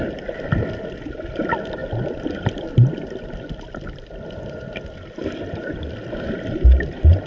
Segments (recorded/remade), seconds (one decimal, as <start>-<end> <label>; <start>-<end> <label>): 0.0-7.3 recorded